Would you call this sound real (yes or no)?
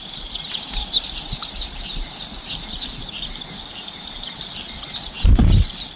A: yes